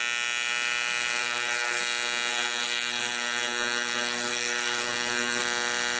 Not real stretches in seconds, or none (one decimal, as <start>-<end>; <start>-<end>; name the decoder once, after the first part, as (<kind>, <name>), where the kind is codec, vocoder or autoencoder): 1.2-1.8 (codec, SNAC); 2.3-5.4